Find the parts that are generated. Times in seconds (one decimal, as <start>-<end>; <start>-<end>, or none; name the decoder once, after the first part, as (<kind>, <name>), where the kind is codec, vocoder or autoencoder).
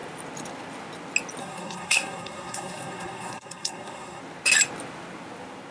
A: 1.4-4.2 (codec, SNAC)